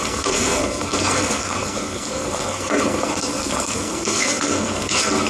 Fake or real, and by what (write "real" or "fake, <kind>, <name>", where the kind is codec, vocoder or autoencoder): fake, codec, SNAC